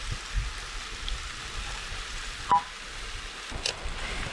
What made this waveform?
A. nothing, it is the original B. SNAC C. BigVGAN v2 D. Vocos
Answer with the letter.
A